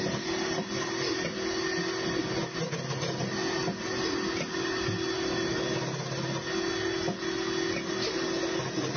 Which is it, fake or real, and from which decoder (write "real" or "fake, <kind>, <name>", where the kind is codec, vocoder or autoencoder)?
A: real